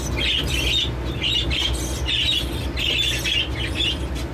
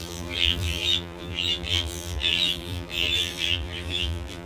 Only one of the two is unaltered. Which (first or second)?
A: first